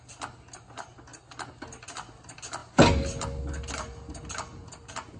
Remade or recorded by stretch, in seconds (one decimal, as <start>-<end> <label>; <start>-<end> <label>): 0.0-5.2 recorded